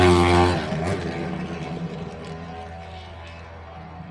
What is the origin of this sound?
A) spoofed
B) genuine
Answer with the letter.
B